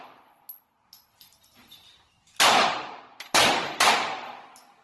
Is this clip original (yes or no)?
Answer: yes